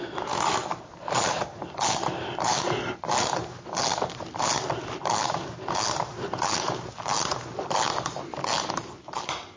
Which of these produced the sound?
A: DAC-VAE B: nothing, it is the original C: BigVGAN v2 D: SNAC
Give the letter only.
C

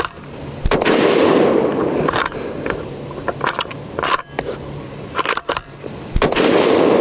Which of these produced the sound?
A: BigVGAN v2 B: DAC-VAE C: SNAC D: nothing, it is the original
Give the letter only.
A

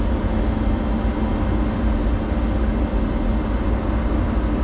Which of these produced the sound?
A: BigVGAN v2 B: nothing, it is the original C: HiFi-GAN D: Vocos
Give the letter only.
B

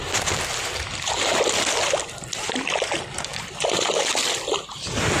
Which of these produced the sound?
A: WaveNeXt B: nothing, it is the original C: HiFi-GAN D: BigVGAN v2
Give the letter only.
B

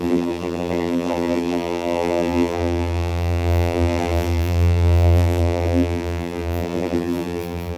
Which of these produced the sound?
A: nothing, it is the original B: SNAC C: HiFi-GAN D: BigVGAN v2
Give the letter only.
D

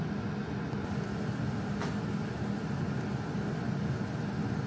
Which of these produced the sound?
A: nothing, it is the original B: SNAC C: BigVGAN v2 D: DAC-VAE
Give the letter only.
A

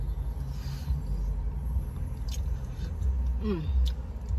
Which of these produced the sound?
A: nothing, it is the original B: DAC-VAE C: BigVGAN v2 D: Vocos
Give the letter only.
A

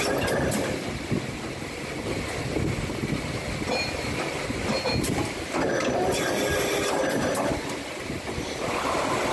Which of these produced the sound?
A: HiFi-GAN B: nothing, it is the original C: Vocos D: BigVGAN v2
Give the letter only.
B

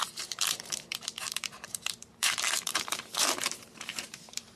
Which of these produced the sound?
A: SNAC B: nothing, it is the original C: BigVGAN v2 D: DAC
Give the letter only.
C